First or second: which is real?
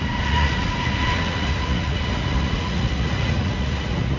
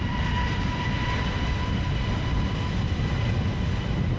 second